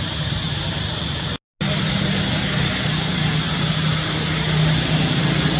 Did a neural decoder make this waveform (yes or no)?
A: no